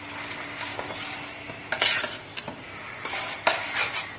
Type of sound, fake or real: real